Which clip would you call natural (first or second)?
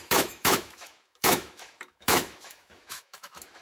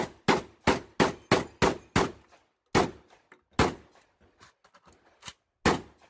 second